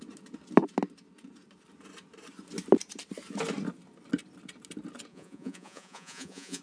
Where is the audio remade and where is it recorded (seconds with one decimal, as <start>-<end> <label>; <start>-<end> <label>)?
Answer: 0.0-5.1 recorded; 5.1-6.6 remade